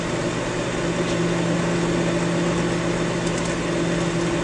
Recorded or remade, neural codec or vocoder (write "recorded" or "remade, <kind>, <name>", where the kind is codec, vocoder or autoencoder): recorded